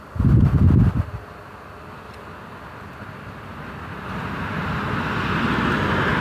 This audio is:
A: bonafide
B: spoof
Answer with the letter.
A